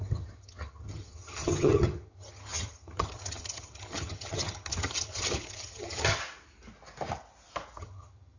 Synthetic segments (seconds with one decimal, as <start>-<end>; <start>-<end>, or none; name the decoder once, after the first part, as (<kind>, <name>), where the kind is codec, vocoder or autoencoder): 0.0-6.2 (vocoder, HiFi-GAN); 7.8-8.4